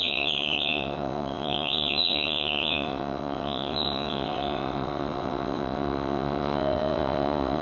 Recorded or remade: remade